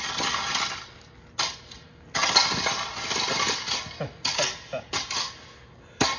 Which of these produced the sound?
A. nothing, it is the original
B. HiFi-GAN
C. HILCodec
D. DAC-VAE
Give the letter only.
A